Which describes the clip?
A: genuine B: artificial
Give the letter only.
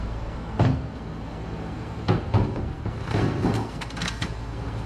B